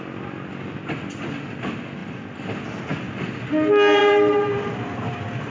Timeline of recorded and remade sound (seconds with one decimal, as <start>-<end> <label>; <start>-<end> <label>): 0.0-5.5 recorded